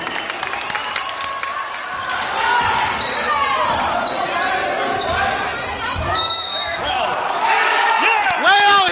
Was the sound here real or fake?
real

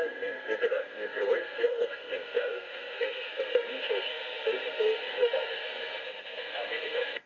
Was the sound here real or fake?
fake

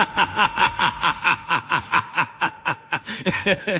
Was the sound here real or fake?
fake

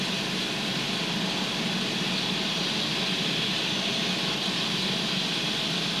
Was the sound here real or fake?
real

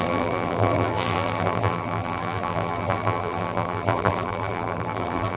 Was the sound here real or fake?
fake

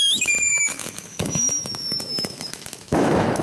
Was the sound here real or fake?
fake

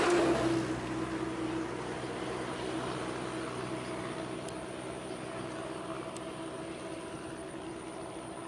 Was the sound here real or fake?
real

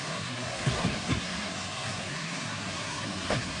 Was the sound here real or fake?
fake